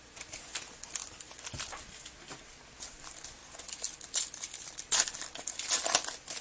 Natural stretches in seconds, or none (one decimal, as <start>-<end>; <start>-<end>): 0.0-6.4